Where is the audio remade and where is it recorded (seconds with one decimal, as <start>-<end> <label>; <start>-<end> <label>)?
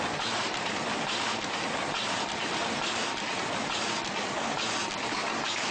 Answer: 0.0-5.7 recorded